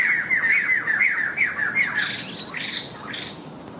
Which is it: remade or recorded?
recorded